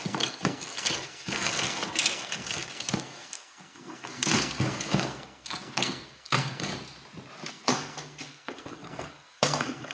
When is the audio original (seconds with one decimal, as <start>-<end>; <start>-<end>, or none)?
6.7-7.5